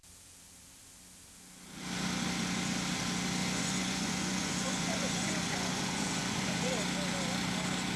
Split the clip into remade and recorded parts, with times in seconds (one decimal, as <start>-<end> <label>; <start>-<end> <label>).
0.0-3.4 recorded; 3.4-6.7 remade; 6.7-8.0 recorded